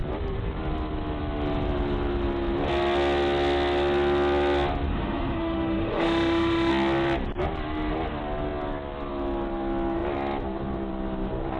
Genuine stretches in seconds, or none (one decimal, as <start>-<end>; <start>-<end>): 0.0-4.9; 6.7-11.6